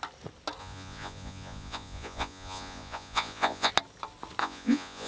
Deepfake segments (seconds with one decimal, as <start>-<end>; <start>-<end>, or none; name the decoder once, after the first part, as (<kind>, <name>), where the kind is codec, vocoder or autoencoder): 0.6-3.7 (vocoder, Vocos); 4.4-5.1